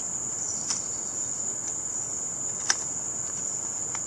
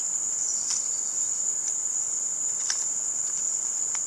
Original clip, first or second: first